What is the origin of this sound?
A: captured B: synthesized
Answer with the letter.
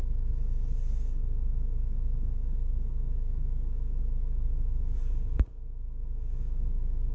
B